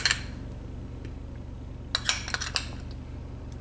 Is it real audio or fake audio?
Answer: real